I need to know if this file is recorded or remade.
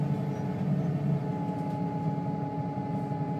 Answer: recorded